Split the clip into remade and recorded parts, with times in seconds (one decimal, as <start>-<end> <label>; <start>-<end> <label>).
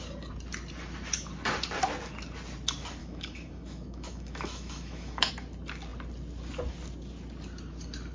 0.0-3.0 recorded; 3.0-5.3 remade; 5.3-8.1 recorded